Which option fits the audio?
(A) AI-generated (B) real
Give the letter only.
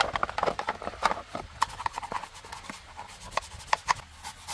B